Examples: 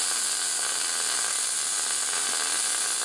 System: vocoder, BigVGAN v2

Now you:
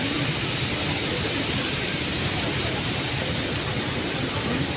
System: none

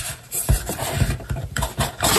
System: vocoder, BigVGAN v2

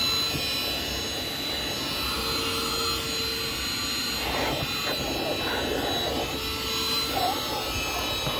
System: none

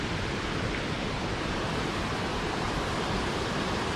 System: vocoder, BigVGAN v2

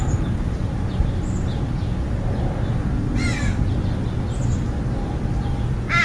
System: none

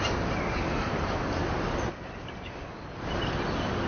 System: vocoder, BigVGAN v2